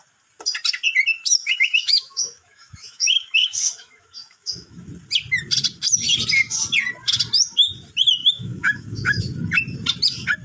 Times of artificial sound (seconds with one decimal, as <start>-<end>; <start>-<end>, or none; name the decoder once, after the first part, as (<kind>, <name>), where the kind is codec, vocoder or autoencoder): 1.1-4.8 (autoencoder, DAC-VAE); 8.2-9.2